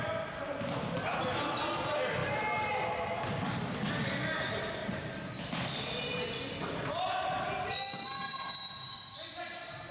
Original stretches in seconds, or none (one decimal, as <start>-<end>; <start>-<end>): 0.0-4.8; 5.4-9.9